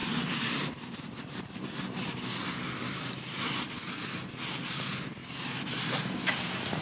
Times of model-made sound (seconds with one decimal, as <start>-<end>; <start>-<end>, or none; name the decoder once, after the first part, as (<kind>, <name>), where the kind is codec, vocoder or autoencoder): 0.0-1.6 (vocoder, BigVGAN v2)